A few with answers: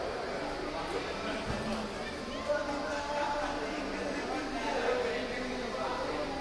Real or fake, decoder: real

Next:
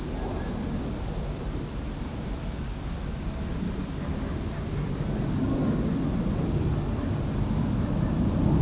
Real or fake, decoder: real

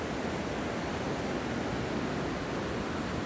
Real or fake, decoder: real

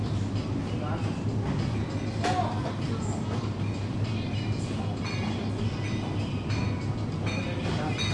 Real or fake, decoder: real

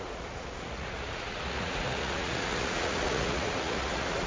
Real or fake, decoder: fake, vocoder, Vocos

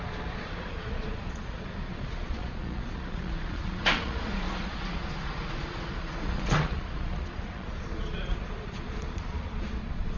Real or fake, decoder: fake, vocoder, Vocos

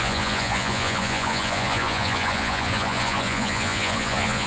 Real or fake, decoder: fake, vocoder, Vocos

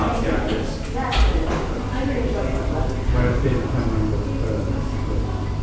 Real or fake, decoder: real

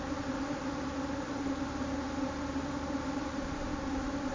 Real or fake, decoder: real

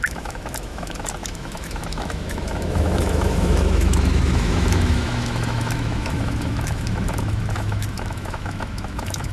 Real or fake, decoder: fake, autoencoder, DAC-VAE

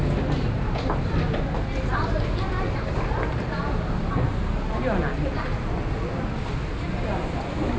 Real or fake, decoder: real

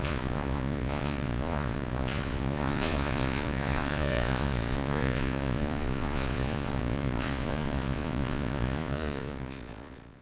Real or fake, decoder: fake, vocoder, Vocos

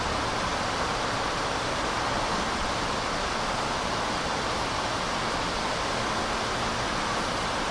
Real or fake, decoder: fake, vocoder, BigVGAN v2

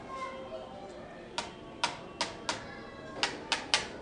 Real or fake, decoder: real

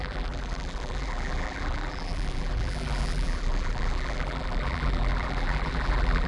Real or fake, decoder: fake, vocoder, BigVGAN v2